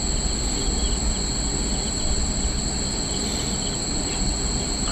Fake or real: real